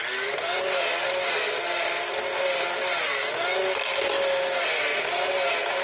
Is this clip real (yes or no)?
yes